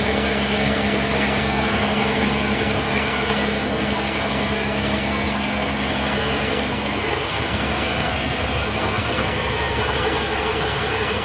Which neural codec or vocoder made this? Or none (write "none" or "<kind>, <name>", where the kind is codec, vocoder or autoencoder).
codec, SNAC